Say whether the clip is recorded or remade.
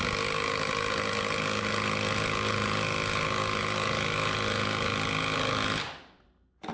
recorded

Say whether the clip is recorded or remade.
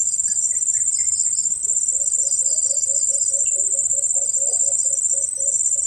recorded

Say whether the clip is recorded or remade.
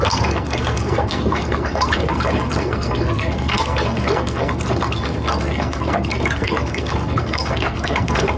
remade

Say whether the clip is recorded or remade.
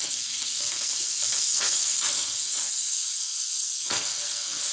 remade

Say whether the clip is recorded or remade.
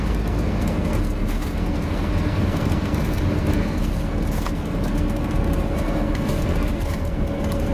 remade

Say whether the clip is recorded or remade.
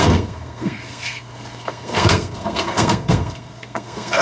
remade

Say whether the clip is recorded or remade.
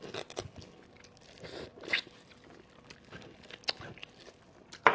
recorded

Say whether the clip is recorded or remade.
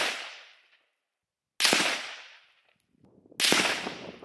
recorded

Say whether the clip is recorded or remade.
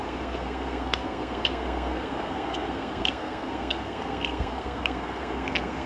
remade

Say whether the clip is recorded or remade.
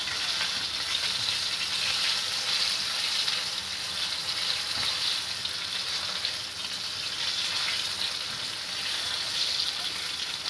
recorded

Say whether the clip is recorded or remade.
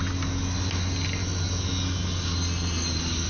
recorded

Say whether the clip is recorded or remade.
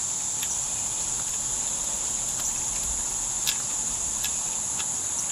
recorded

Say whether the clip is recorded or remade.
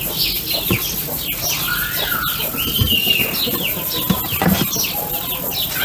recorded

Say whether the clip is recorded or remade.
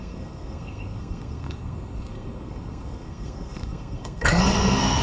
remade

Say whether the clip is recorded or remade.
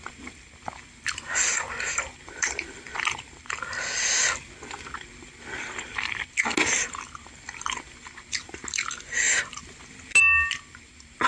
recorded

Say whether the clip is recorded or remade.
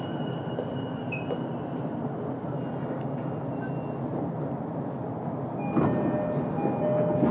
recorded